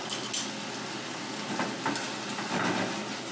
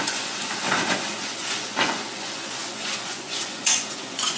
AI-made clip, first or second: second